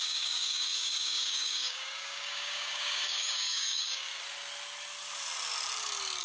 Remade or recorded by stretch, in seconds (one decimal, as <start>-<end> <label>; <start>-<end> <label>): 0.0-4.1 remade; 4.1-6.2 recorded